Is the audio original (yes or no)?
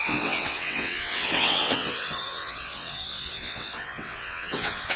no